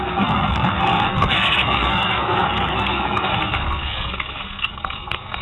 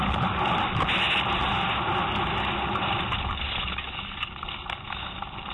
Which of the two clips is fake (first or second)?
first